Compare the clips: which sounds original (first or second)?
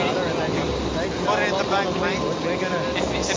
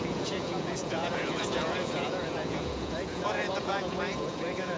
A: first